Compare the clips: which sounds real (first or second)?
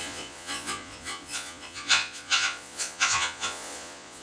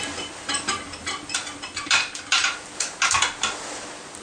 second